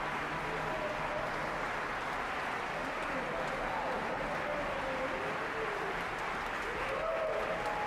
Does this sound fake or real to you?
real